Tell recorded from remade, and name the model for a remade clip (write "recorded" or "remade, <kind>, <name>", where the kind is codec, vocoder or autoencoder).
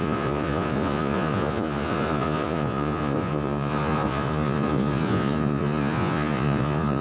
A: remade, vocoder, Vocos